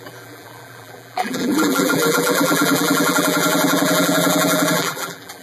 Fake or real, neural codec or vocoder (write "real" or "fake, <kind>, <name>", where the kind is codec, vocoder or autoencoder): fake, vocoder, BigVGAN v2